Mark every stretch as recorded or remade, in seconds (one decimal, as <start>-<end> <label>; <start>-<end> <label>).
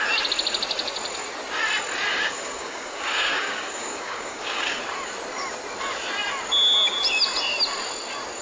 0.0-2.1 recorded; 2.1-4.8 remade; 4.8-8.4 recorded